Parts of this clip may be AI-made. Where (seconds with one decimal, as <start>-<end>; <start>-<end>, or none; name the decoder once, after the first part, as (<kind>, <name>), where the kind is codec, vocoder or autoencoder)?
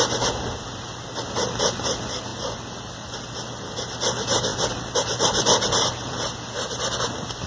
none